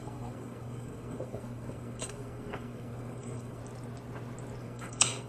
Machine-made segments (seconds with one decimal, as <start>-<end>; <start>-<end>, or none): 0.0-3.6; 4.6-5.3

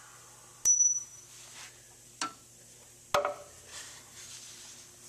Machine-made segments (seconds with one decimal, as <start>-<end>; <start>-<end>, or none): 3.7-4.3